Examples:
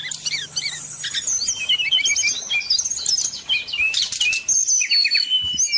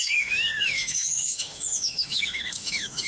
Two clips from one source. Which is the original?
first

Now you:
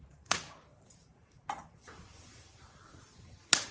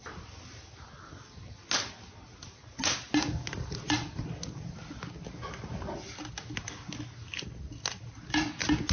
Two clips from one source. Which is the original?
second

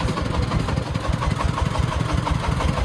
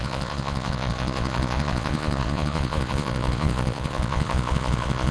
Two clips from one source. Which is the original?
first